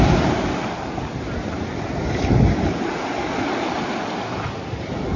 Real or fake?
real